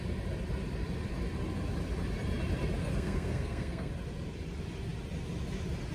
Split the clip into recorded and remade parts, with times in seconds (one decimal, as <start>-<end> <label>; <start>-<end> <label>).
0.0-2.8 recorded; 2.8-3.9 remade; 3.9-5.9 recorded